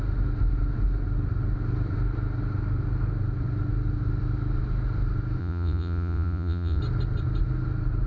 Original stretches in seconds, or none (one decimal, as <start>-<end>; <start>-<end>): 0.0-5.4; 6.8-8.1